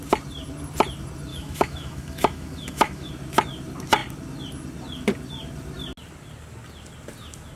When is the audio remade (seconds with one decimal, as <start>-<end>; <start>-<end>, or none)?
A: 1.3-3.1